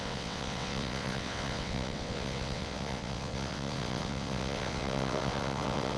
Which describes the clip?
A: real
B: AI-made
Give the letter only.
B